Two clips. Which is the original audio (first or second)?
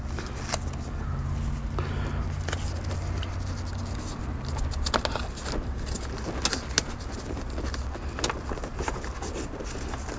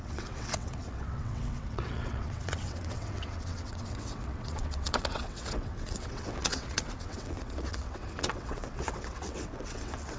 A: first